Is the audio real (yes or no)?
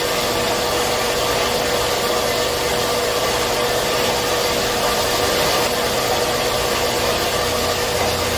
yes